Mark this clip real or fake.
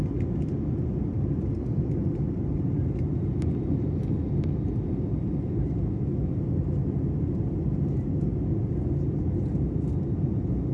real